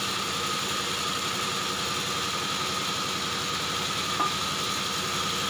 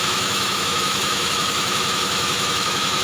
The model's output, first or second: second